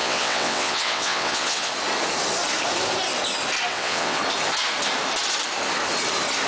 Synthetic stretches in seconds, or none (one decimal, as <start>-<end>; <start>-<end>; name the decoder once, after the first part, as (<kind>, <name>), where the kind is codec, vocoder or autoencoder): 0.0-1.7 (vocoder, WaveNeXt); 3.7-4.2